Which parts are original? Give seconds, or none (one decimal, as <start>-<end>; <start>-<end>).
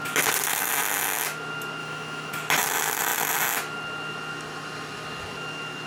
0.0-1.8; 2.3-5.9